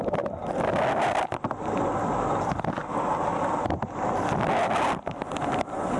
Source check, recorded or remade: recorded